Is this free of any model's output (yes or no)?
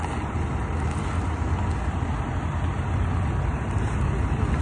yes